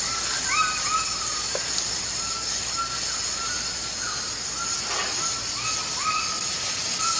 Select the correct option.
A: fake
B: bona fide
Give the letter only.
B